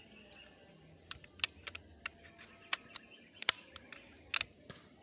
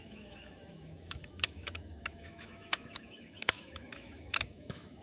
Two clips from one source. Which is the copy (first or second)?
second